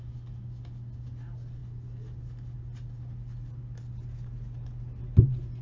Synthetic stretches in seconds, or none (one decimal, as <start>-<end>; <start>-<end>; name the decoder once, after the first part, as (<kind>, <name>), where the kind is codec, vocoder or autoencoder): none